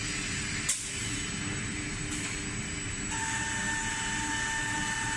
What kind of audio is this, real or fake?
real